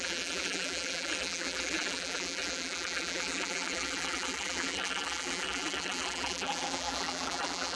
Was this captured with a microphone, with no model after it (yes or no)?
no